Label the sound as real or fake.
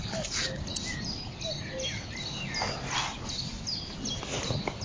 real